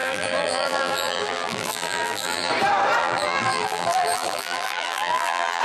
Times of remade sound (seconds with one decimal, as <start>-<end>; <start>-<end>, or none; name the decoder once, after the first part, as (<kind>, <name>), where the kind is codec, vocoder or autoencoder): 0.0-2.5 (vocoder, BigVGAN v2); 3.0-5.6